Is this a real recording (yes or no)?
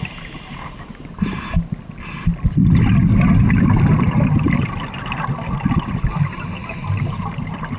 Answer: yes